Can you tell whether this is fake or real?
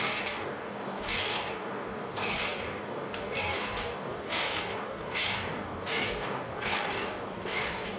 fake